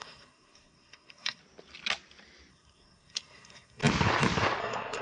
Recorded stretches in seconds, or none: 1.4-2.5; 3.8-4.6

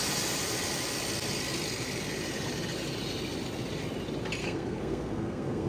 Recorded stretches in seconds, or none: 0.0-4.4

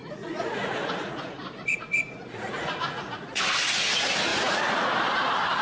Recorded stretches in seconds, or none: 3.4-4.3; 4.9-5.6

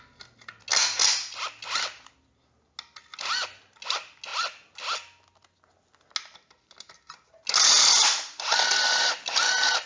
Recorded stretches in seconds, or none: 0.0-9.9

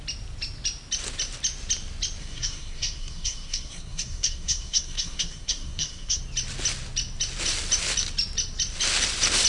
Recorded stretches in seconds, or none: 0.0-2.2; 6.2-9.5

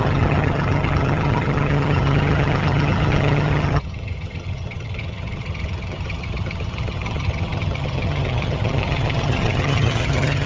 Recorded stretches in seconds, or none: none

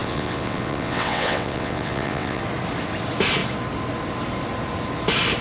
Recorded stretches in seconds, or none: 2.4-5.4

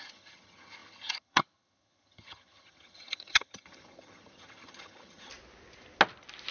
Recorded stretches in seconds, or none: 5.3-6.5